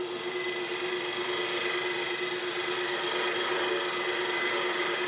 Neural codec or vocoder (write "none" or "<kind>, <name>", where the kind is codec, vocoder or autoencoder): none